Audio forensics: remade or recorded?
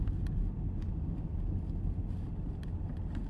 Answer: recorded